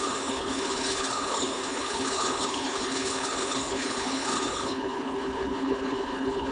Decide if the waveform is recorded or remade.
remade